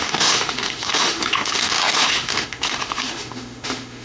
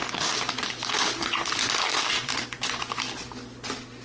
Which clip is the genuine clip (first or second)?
second